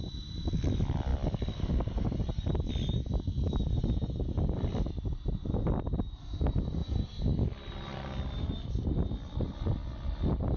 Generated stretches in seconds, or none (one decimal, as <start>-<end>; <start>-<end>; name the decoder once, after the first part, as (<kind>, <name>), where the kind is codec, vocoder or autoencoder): 0.0-3.1 (vocoder, BigVGAN v2); 4.3-6.8; 7.3-9.8